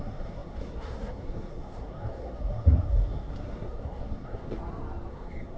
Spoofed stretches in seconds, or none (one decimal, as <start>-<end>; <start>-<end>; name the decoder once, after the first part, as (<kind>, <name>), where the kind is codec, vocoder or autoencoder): 0.0-4.6 (codec, SNAC); 5.1-5.6